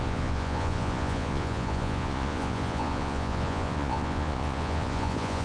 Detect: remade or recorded remade